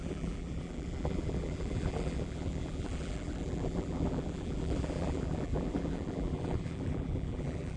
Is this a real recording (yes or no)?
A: no